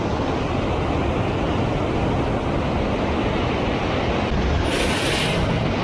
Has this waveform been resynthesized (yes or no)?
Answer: no